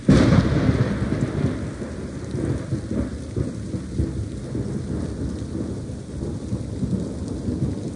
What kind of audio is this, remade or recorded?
recorded